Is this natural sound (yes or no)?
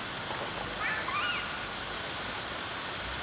yes